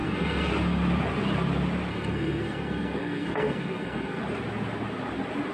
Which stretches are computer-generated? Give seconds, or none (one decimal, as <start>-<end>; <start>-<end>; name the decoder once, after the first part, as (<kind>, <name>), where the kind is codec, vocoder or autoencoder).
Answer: 0.0-0.5 (codec, SNAC); 1.9-4.2